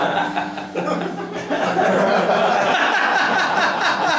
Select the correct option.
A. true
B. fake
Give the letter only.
A